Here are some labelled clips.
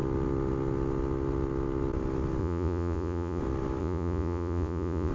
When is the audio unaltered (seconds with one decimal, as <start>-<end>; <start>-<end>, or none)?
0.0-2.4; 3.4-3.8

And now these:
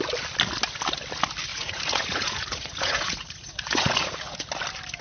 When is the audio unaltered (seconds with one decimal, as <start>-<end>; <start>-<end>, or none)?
0.0-1.5; 4.5-5.0

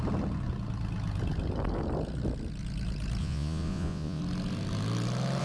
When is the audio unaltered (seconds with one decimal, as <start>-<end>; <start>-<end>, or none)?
0.0-3.2; 4.2-5.4

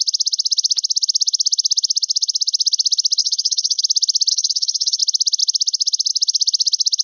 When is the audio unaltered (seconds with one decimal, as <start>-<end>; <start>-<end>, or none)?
0.0-3.2; 3.8-4.3; 5.0-7.0